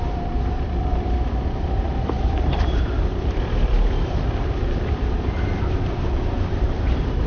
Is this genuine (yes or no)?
no